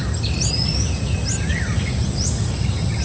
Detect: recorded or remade recorded